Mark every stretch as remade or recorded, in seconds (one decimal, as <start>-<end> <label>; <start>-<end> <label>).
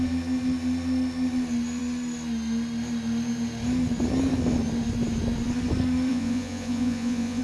0.0-6.1 recorded; 6.1-7.4 remade